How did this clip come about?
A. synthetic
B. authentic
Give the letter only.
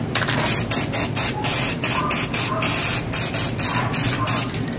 B